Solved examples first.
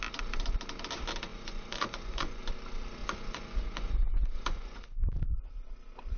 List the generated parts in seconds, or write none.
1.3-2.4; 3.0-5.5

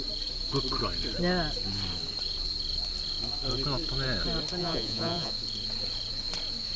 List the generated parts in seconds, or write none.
4.6-5.3

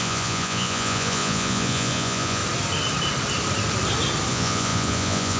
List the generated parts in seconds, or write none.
0.0-2.4; 4.3-5.4

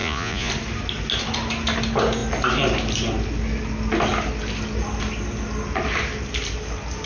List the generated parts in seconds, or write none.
0.0-0.5

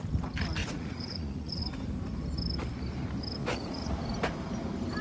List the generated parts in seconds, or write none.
0.6-1.6; 3.4-4.0

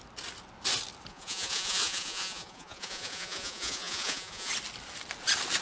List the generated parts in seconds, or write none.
1.1-4.5